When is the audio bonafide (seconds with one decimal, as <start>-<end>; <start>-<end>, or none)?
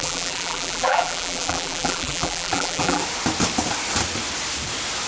3.0-5.1